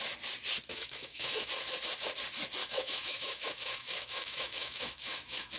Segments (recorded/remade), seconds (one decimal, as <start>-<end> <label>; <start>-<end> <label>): 0.0-0.7 recorded; 0.7-1.5 remade; 1.5-2.6 recorded; 2.6-5.6 remade

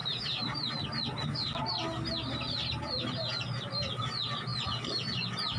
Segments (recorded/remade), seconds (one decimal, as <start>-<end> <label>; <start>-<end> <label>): 0.0-0.7 remade; 0.7-5.6 recorded

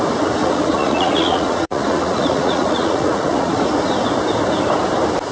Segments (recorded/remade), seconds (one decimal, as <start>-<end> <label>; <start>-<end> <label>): 0.0-0.4 recorded; 0.4-3.6 remade; 3.6-5.3 recorded

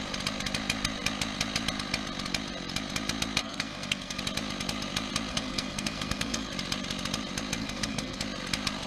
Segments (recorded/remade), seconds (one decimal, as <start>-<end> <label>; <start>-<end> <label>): 0.0-3.4 recorded; 3.4-4.2 remade; 4.2-5.3 recorded; 5.3-6.5 remade; 6.5-7.6 recorded; 7.6-8.2 remade; 8.2-8.9 recorded

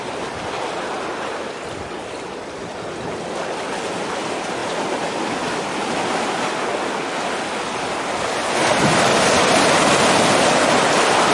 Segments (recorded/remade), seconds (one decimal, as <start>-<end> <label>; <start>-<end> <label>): 0.0-11.3 recorded

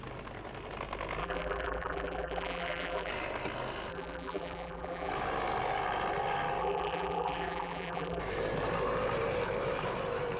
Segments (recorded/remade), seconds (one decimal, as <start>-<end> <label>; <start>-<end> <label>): 0.0-1.2 recorded; 1.2-3.1 remade; 3.1-3.9 recorded; 3.9-5.1 remade; 5.1-6.6 recorded; 6.6-8.2 remade; 8.2-10.4 recorded